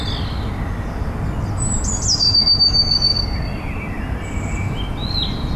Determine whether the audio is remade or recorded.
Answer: recorded